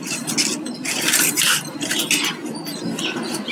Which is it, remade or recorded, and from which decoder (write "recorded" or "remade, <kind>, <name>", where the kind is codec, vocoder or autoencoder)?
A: recorded